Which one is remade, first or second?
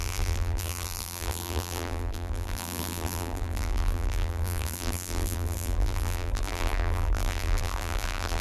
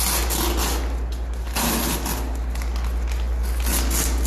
first